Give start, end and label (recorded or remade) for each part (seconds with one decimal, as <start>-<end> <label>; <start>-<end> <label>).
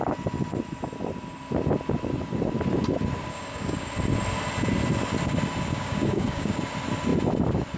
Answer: 0.0-3.3 recorded; 3.3-3.9 remade; 3.9-5.7 recorded; 5.7-6.6 remade; 6.6-7.8 recorded